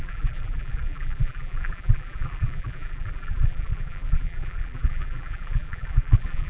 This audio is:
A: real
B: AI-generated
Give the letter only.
B